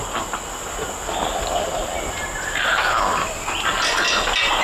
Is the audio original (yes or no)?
yes